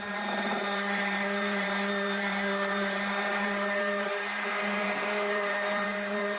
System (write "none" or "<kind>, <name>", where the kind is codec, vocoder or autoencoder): vocoder, BigVGAN v2